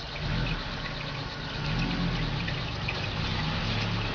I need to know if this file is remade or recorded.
recorded